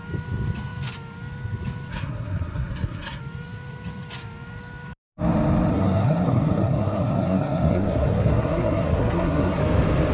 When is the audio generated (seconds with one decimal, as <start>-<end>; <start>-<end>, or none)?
1.9-3.2; 5.7-9.6